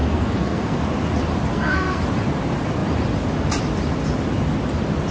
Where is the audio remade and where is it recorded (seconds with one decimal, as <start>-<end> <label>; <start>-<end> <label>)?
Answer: 0.0-0.8 remade; 0.8-1.5 recorded; 1.5-2.0 remade; 2.0-5.1 recorded